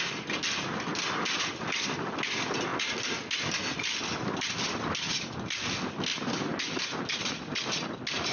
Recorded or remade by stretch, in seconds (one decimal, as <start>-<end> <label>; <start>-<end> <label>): 0.0-8.3 recorded